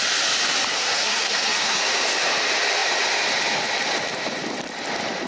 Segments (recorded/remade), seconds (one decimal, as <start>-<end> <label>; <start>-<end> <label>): 0.0-0.7 recorded; 0.7-1.8 remade; 1.8-5.3 recorded